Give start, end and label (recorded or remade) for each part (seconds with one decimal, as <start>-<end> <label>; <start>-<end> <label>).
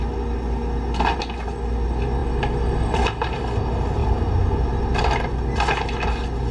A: 0.0-6.5 recorded